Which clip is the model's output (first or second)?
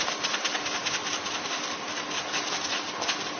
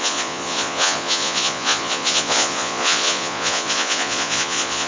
second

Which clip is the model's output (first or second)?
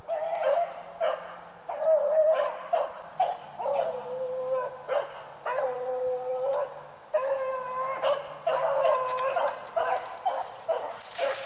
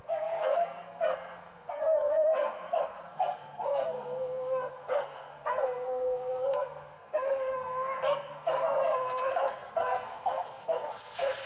second